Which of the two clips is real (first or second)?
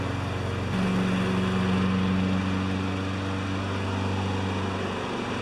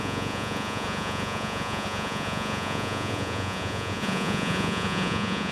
first